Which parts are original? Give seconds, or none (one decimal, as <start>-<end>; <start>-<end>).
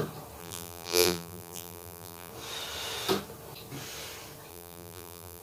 0.0-0.4; 2.3-4.5